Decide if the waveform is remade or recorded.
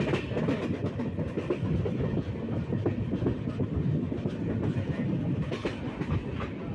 recorded